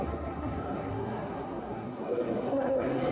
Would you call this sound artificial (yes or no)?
yes